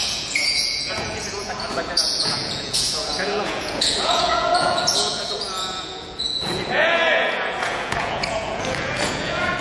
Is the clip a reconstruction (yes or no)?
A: yes